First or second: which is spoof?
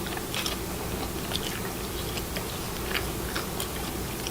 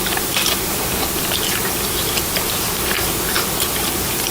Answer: second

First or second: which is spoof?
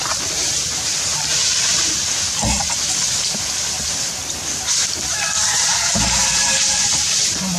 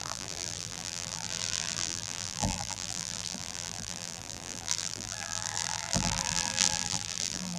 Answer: second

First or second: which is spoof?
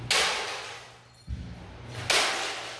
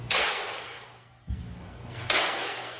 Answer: second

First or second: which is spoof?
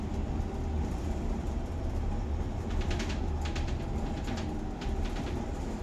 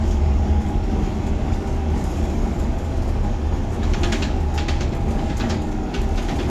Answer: second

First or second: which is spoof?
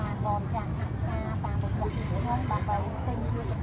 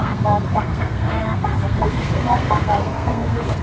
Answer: second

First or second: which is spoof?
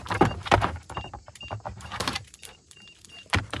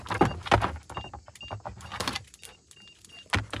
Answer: first